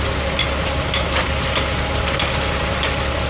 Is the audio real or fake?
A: real